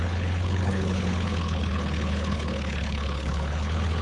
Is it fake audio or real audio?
fake